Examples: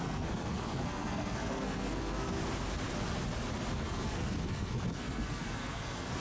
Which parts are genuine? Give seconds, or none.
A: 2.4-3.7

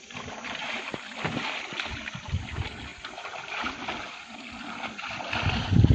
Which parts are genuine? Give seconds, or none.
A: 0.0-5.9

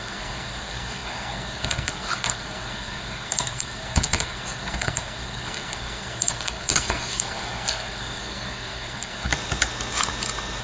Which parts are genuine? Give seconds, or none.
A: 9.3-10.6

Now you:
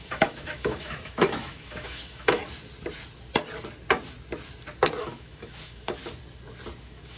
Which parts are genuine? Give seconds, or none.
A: 2.4-5.0; 6.0-6.8

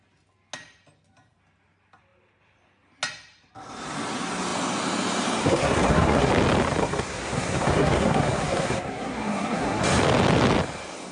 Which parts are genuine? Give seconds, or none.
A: 0.0-5.4; 6.3-6.8; 9.8-11.1

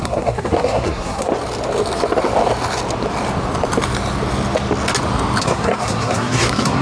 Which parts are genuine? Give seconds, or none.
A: 1.3-5.4

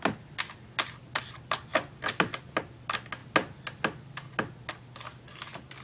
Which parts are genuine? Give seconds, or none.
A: 0.0-5.8